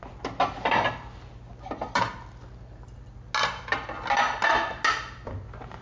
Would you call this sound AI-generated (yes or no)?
no